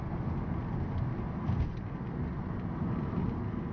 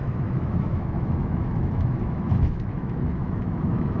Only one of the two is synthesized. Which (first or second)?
second